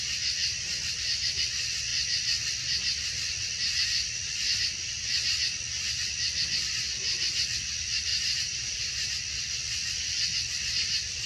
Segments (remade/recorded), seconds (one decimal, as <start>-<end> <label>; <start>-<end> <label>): 0.0-8.1 recorded; 8.1-9.1 remade; 9.1-11.3 recorded